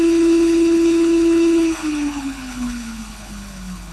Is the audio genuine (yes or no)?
no